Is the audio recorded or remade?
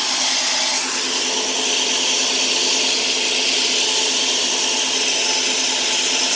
recorded